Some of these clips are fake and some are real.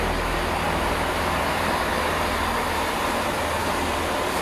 real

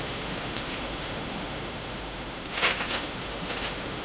fake